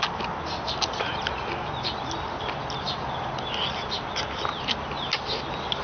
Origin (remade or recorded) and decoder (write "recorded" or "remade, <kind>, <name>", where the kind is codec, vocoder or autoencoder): recorded